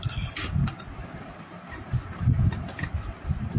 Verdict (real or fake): real